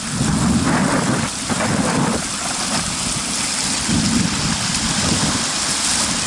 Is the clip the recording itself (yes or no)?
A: yes